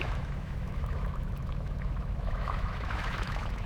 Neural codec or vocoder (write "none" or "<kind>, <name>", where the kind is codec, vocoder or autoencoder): autoencoder, DAC-VAE